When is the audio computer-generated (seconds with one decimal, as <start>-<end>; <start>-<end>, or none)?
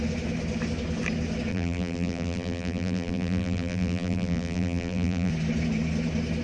1.5-5.3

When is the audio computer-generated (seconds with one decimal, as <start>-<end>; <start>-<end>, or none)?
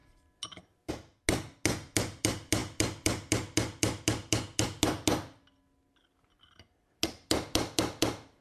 none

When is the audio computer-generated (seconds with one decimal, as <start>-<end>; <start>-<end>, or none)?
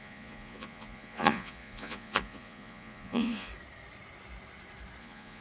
0.0-3.5; 5.0-5.4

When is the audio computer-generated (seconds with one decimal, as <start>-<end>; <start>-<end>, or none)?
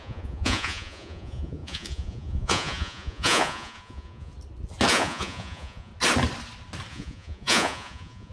0.0-4.3; 4.9-5.9; 6.9-8.3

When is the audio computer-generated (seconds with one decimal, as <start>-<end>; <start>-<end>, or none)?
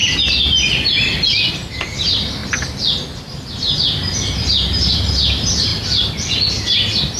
1.5-2.4; 3.2-5.7; 6.5-7.2